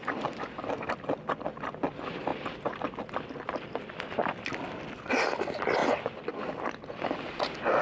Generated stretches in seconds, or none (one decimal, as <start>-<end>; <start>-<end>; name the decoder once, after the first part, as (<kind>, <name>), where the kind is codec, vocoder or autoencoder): none